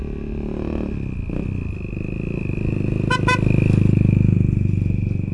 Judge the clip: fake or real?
real